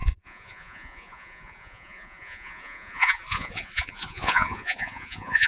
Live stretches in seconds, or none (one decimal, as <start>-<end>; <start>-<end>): none